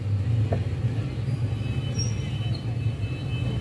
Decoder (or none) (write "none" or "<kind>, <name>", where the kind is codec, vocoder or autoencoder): none